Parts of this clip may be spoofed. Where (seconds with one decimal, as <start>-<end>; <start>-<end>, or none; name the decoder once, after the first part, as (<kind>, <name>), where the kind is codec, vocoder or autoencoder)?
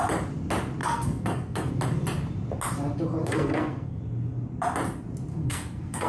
0.8-1.7 (codec, SNAC); 3.2-4.0; 5.3-6.1